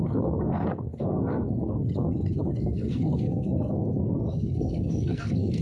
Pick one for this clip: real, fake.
fake